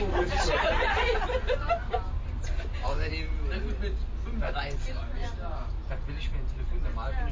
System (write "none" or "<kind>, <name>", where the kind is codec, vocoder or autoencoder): none